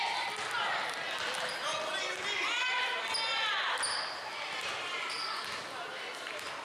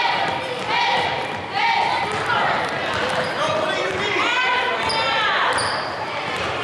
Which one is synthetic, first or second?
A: second